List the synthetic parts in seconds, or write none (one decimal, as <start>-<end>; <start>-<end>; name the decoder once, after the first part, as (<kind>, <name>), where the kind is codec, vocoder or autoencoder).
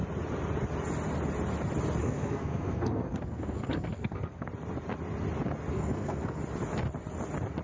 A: 2.0-4.5 (codec, SNAC); 5.7-6.4